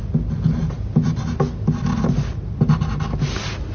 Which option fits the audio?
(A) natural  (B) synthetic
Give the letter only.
A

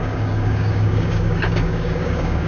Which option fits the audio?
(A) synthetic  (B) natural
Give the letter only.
A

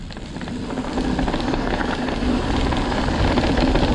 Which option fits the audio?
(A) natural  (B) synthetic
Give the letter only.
A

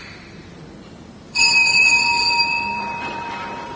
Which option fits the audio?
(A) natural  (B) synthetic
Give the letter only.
B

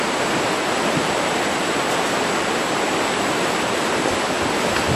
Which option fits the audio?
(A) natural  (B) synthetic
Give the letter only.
A